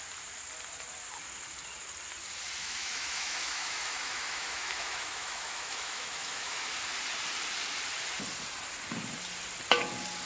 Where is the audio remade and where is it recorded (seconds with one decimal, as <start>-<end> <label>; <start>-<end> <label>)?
0.0-2.6 recorded; 2.6-6.8 remade; 6.8-10.3 recorded